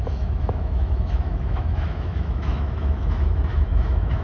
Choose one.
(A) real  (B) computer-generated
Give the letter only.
B